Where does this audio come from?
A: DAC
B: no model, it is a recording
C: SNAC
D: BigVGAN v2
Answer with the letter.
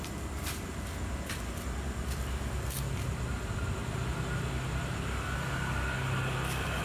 B